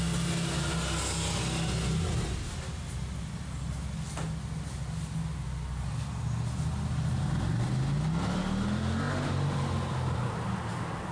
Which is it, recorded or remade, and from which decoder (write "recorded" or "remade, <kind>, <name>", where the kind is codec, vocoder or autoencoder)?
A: recorded